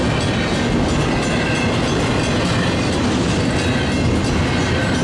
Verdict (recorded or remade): recorded